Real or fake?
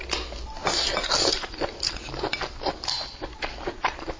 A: real